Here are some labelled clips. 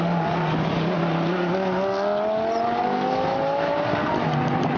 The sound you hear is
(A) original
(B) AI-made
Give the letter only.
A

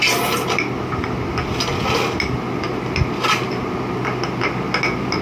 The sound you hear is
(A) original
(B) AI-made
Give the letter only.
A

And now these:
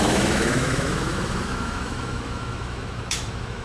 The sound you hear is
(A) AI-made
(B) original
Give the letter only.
A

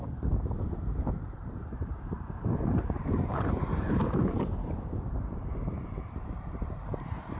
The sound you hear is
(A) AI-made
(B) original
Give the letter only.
A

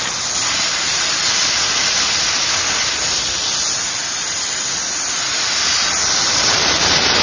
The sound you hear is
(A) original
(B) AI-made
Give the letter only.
A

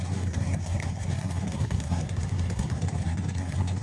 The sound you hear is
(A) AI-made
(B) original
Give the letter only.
A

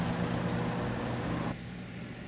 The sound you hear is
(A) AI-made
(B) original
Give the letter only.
B